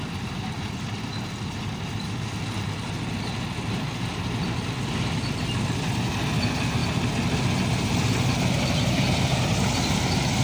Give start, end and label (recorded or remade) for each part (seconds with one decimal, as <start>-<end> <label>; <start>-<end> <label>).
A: 0.0-10.4 recorded